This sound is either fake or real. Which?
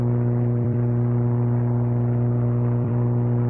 fake